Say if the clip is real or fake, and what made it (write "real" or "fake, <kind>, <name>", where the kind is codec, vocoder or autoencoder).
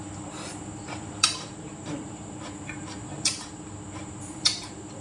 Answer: fake, vocoder, BigVGAN v2